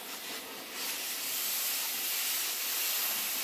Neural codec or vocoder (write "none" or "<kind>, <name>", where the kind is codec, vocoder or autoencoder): none